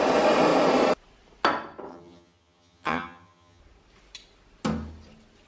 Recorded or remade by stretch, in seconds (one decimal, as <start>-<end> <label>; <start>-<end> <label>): 0.0-1.9 recorded; 1.9-3.6 remade; 3.6-5.5 recorded